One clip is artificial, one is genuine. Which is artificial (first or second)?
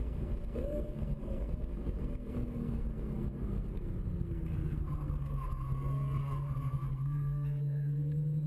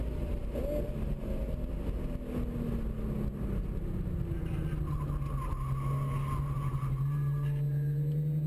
first